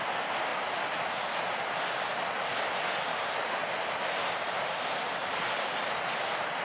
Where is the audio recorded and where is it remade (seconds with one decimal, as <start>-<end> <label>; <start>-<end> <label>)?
0.0-6.6 recorded

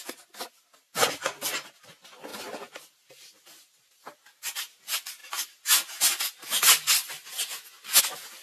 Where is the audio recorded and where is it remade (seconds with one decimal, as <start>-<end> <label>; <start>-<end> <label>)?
0.0-2.3 recorded; 2.3-4.8 remade; 4.8-8.4 recorded

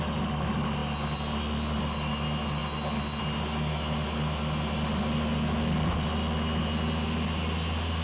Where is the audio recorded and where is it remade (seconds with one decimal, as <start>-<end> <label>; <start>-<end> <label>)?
0.0-8.0 recorded

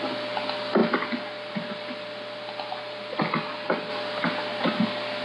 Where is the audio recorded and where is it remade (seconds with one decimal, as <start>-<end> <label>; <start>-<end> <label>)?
0.0-5.2 recorded

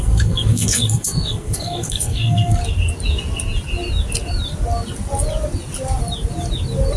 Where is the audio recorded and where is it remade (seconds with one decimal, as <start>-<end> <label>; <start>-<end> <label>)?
0.0-2.6 remade; 2.6-7.0 recorded

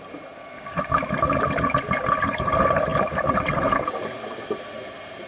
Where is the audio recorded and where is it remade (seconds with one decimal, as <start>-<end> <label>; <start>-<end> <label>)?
0.0-5.3 recorded

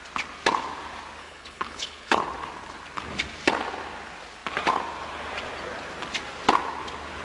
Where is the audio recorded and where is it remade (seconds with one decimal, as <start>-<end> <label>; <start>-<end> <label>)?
0.0-1.2 recorded; 1.2-2.2 remade; 2.2-7.2 recorded

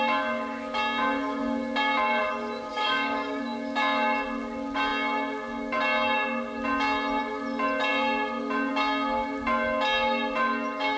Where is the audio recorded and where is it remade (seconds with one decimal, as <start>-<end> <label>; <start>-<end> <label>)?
0.0-2.7 recorded; 2.7-3.4 remade; 3.4-11.0 recorded